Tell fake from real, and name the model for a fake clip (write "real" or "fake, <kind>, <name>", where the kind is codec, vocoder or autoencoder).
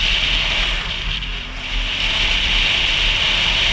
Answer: real